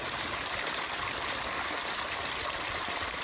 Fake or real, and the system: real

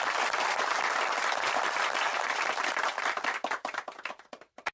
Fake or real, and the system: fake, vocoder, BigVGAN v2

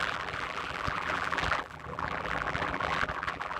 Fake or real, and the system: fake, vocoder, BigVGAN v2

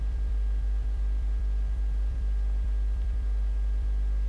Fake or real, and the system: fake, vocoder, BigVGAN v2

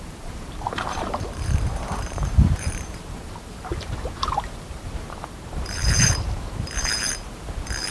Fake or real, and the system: fake, vocoder, BigVGAN v2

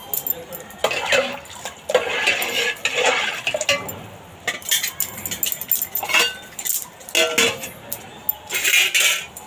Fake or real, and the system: real